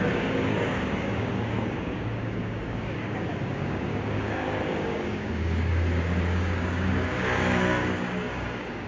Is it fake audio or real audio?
fake